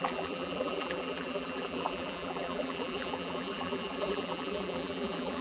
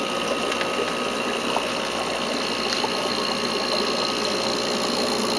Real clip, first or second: second